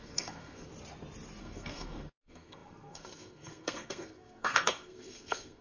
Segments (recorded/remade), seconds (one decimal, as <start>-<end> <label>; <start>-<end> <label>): 0.0-0.7 remade; 0.7-1.4 recorded; 1.4-5.6 remade